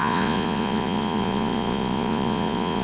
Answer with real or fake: fake